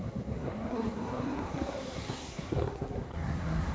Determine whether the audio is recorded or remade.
remade